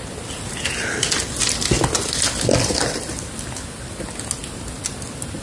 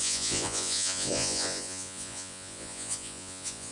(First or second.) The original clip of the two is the first